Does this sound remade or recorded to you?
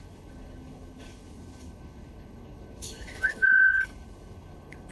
remade